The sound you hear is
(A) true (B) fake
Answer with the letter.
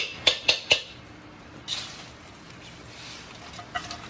A